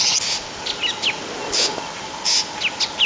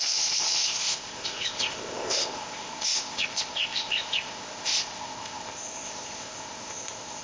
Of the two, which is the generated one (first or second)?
second